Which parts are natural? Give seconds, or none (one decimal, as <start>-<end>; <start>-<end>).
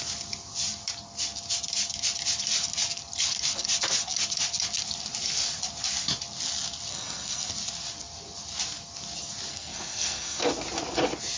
0.0-6.9; 7.5-9.5; 10.5-11.4